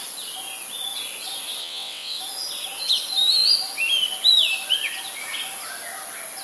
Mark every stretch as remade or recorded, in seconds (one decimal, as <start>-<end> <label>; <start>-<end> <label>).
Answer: 0.0-1.6 recorded; 1.6-2.2 remade; 2.2-6.4 recorded